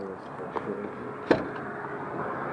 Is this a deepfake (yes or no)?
no